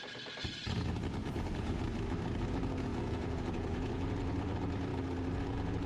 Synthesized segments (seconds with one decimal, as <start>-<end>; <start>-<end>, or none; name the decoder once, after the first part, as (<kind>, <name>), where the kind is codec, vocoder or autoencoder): 1.2-1.8 (vocoder, Vocos); 2.9-4.2